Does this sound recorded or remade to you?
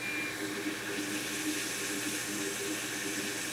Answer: recorded